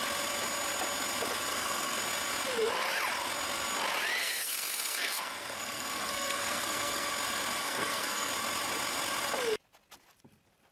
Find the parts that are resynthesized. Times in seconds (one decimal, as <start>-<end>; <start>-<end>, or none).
1.5-2.0; 4.2-7.1; 7.6-8.3